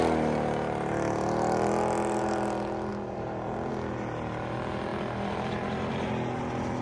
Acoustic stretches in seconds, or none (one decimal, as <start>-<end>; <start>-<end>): 0.0-2.9; 3.7-4.9; 6.1-6.8